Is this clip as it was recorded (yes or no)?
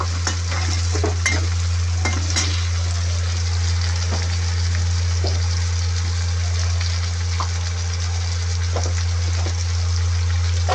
yes